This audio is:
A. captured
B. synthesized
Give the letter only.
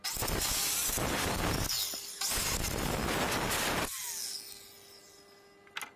A